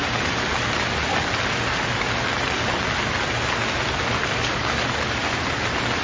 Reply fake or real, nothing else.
real